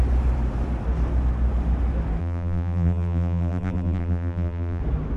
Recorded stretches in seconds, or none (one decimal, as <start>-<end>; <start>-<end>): 0.0-2.2; 4.8-5.2